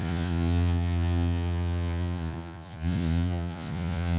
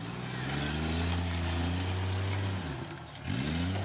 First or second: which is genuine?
second